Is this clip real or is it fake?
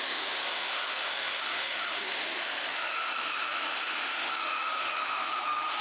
fake